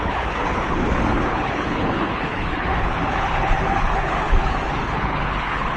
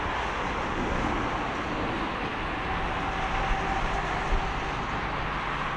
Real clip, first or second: second